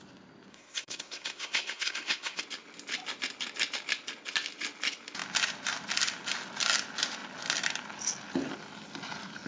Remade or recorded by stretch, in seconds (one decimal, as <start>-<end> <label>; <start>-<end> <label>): 0.0-0.5 recorded; 0.5-2.4 remade; 2.4-9.5 recorded